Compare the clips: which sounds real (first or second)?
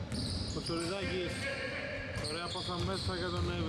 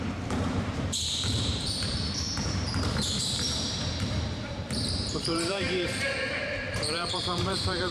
first